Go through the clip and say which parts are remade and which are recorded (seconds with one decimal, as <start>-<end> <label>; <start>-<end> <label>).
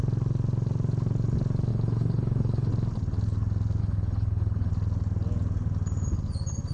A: 0.0-1.7 recorded; 1.7-2.7 remade; 2.7-3.8 recorded; 3.8-4.7 remade; 4.7-6.7 recorded